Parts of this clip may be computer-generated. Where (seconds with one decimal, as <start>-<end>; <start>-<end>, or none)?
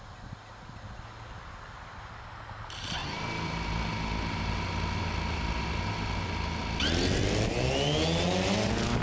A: 3.0-3.8